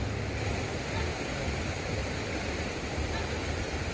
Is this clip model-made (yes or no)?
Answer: no